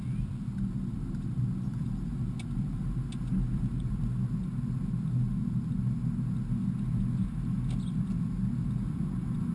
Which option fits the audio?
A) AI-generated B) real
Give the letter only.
B